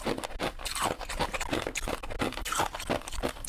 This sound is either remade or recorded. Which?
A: recorded